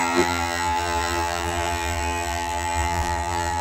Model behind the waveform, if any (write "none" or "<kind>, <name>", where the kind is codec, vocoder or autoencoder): vocoder, BigVGAN v2